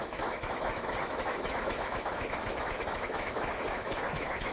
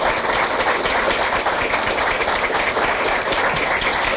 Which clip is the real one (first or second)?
second